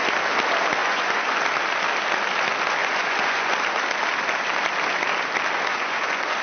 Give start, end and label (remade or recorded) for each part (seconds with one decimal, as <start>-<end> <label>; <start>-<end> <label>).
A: 0.0-0.8 recorded; 0.8-1.4 remade; 1.4-2.8 recorded; 2.8-3.5 remade; 3.5-5.7 recorded; 5.7-6.4 remade